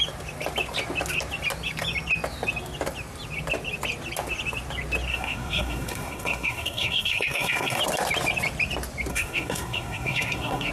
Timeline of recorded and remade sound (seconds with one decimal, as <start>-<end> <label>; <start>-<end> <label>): 0.0-5.1 recorded; 5.1-7.8 remade; 7.8-9.1 recorded; 9.1-10.7 remade